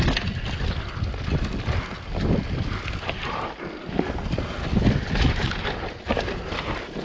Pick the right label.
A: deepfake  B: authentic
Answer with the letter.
B